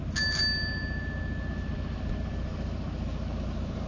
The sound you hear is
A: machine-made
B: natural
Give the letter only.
B